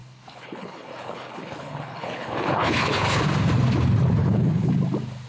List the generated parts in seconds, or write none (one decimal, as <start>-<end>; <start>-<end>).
0.0-3.2; 4.2-4.7